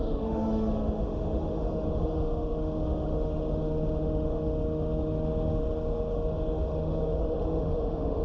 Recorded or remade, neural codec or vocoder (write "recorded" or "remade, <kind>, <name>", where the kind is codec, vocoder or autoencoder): remade, autoencoder, DAC-VAE